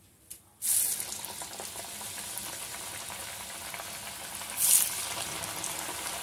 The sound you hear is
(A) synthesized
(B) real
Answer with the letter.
B